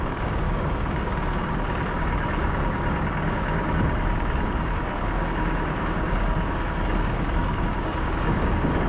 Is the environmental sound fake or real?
fake